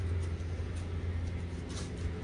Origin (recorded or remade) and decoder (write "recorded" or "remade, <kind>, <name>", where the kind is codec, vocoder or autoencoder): recorded